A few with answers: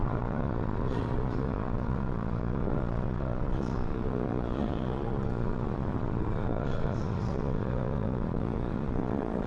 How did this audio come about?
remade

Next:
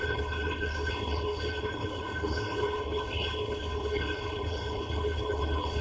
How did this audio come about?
remade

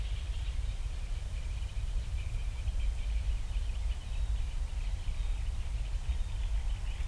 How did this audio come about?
recorded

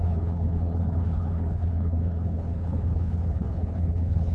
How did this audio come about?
remade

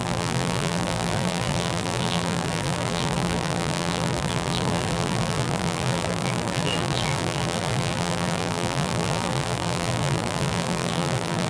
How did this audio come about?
remade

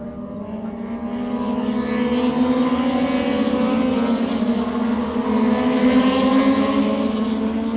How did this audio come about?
recorded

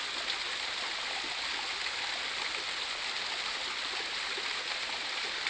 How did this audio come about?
recorded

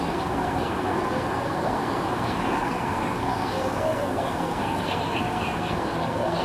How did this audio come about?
remade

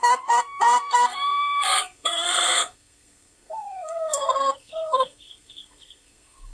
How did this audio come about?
remade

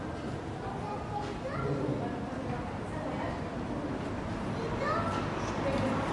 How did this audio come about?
recorded